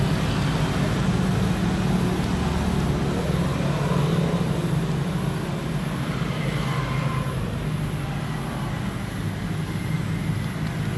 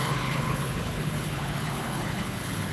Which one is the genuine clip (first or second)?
first